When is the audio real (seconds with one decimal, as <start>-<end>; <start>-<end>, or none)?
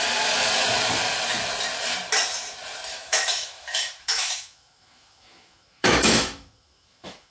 0.0-2.9